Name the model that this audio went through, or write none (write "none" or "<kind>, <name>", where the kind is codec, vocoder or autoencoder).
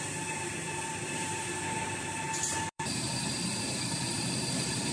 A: vocoder, BigVGAN v2